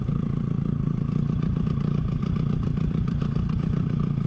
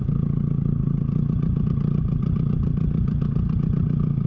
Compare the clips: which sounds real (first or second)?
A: second